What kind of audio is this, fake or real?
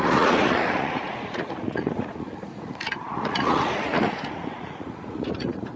fake